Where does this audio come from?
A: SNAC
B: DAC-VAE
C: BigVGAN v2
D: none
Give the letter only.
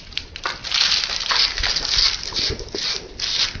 D